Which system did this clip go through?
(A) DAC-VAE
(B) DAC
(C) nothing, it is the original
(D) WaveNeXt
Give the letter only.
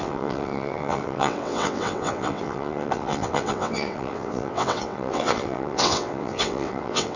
D